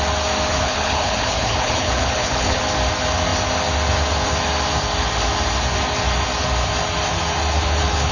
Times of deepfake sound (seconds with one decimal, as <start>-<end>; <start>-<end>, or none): 0.5-2.6

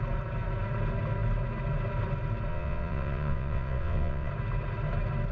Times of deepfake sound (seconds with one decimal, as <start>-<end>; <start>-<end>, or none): 2.5-4.3